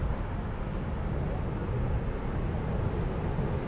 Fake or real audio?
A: real